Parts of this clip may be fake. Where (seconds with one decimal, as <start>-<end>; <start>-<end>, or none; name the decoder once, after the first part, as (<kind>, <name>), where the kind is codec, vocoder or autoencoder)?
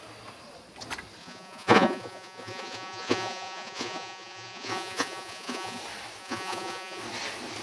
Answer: 1.2-5.8 (vocoder, Vocos); 6.2-7.0